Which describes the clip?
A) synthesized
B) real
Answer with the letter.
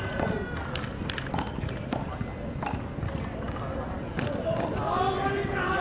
B